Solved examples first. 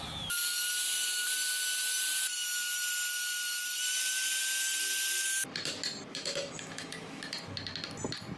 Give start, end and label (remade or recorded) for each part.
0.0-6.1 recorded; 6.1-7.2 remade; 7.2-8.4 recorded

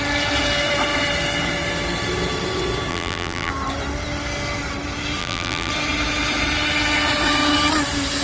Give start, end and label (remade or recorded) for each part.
0.0-2.9 recorded; 2.9-3.5 remade; 3.5-5.2 recorded; 5.2-5.7 remade; 5.7-8.2 recorded

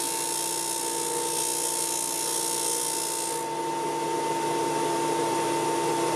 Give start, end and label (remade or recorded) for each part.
0.0-6.2 recorded

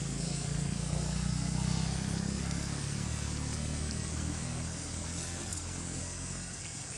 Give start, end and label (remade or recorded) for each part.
0.0-7.0 remade

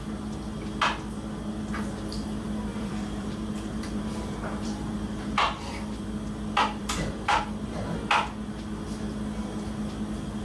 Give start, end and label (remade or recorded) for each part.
0.0-2.7 recorded; 2.7-5.7 remade; 5.7-6.8 recorded; 6.8-8.1 remade; 8.1-10.4 recorded

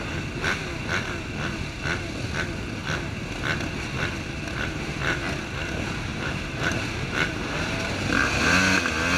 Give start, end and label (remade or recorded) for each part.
0.0-6.1 recorded; 6.1-8.4 remade; 8.4-9.2 recorded